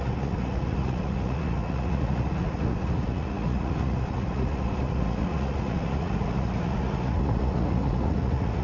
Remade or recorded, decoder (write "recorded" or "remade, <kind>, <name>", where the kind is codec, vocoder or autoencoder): remade, vocoder, Vocos